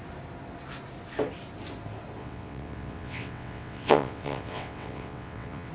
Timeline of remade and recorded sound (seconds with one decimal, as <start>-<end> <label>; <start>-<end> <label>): 0.0-2.2 recorded; 2.2-5.7 remade